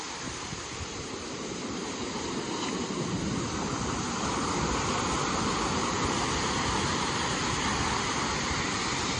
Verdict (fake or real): real